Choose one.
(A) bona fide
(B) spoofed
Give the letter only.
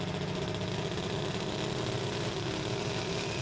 A